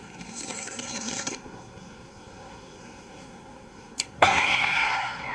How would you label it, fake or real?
fake